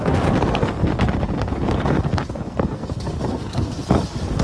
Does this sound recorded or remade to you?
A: remade